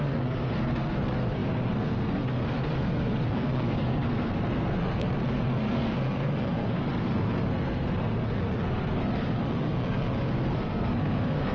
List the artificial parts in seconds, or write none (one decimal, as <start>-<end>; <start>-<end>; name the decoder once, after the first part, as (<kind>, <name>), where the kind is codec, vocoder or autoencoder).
0.0-11.5 (codec, SNAC)